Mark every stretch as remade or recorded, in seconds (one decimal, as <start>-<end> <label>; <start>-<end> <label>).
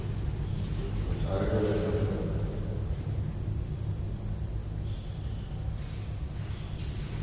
0.0-7.2 recorded